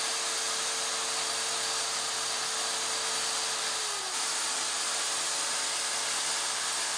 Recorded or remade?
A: recorded